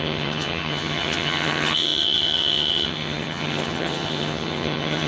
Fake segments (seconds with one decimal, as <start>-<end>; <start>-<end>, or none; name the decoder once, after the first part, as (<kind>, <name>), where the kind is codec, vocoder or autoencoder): 0.0-5.1 (vocoder, HiFi-GAN)